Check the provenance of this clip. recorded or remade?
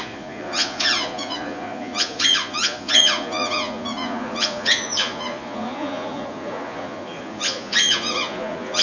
remade